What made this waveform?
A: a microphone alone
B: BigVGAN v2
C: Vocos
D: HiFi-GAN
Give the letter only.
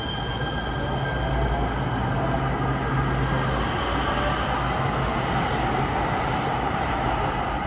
A